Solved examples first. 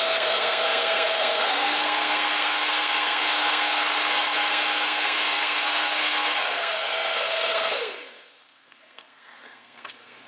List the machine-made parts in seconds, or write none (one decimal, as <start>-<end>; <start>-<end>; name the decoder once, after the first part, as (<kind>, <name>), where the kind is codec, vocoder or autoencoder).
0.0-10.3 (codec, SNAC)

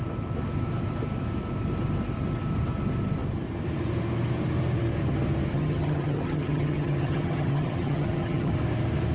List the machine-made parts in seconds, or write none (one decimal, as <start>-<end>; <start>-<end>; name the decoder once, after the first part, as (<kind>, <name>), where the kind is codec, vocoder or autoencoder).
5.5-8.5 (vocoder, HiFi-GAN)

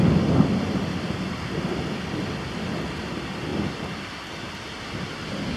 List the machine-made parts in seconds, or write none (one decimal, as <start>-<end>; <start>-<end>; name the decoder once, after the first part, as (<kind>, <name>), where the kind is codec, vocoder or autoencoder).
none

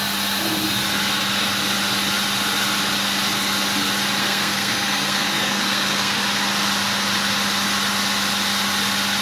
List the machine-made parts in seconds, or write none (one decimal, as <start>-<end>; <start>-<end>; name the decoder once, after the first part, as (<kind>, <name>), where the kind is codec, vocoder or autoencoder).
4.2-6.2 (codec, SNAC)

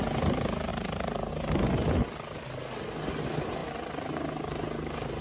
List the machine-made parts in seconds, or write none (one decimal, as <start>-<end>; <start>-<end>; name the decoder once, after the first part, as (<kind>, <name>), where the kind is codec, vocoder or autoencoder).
0.7-1.3 (vocoder, BigVGAN v2)

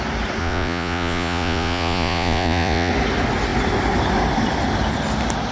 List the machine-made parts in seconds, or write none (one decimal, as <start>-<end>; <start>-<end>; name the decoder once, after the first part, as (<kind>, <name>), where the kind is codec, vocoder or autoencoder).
0.4-2.9 (vocoder, Vocos)